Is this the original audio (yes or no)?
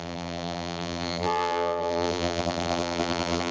no